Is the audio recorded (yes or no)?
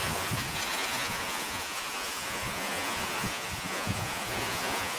no